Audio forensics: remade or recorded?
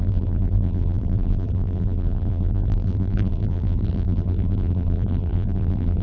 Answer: remade